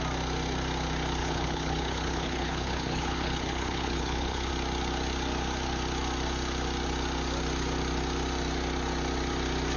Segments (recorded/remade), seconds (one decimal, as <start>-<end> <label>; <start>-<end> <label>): 0.0-1.2 recorded; 1.2-4.5 remade; 4.5-9.8 recorded